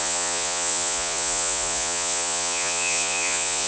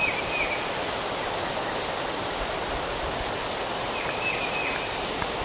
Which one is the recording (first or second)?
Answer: second